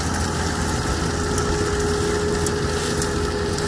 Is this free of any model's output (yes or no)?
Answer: yes